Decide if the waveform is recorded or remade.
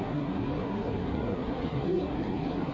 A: remade